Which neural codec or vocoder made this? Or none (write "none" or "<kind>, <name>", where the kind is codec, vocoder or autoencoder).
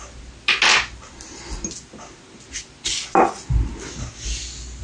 none